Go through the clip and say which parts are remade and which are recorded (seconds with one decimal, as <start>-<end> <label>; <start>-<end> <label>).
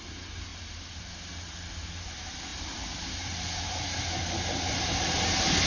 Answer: 0.0-0.5 recorded; 0.5-1.0 remade; 1.0-2.5 recorded; 2.5-3.1 remade; 3.1-5.7 recorded